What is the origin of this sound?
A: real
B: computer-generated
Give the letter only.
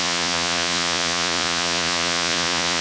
B